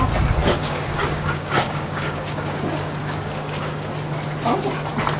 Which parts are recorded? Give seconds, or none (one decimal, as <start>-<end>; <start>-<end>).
0.0-0.4; 2.6-3.0; 3.9-5.2